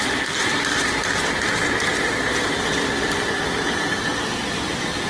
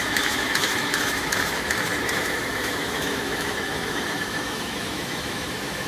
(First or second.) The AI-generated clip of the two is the second